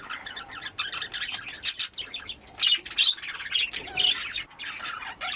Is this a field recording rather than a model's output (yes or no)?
yes